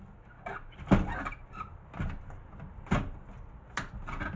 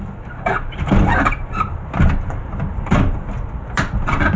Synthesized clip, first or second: second